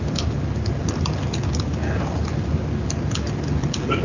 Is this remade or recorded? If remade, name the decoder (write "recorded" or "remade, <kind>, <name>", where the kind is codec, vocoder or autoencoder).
recorded